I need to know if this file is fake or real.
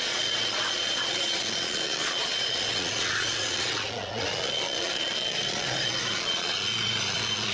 fake